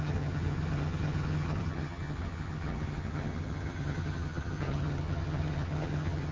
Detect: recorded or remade remade